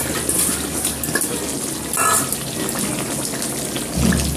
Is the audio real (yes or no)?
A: yes